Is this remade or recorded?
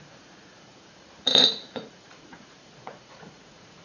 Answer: remade